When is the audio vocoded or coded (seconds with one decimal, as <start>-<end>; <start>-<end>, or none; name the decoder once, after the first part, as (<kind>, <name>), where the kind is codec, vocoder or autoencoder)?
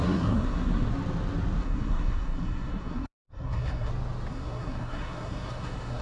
0.0-0.9 (codec, SNAC); 1.6-3.9; 4.3-6.0